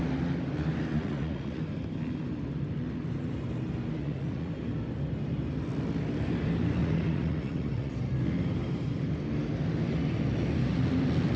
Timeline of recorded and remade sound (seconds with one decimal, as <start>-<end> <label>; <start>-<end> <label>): 0.0-0.9 recorded; 0.9-1.6 remade; 1.6-4.0 recorded; 4.0-4.5 remade; 4.5-6.8 recorded; 6.8-7.9 remade; 7.9-11.4 recorded